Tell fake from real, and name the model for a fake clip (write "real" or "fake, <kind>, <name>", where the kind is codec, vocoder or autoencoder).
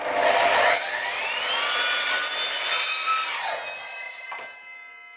real